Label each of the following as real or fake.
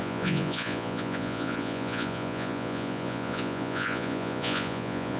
fake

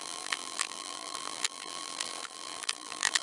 fake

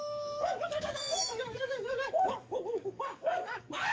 fake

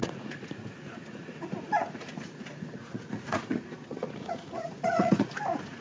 fake